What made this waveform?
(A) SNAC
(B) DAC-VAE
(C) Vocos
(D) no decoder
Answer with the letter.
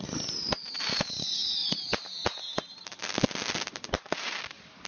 D